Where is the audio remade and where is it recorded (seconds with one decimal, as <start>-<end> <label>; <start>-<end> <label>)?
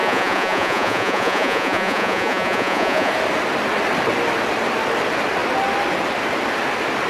0.0-3.1 remade; 3.1-7.1 recorded